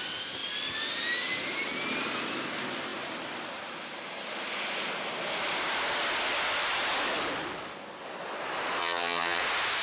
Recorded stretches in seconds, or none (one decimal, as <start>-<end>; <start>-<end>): 0.0-8.8; 9.4-9.8